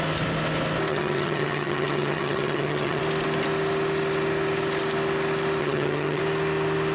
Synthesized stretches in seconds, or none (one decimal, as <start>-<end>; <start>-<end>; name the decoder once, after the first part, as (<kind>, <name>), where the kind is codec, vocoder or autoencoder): 0.9-3.0 (vocoder, HiFi-GAN); 5.6-6.2